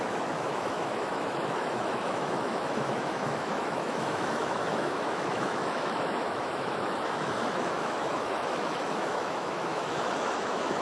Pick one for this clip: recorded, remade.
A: remade